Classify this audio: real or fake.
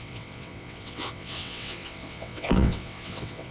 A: fake